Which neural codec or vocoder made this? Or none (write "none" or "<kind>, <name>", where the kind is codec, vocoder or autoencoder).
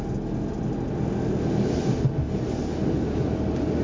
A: none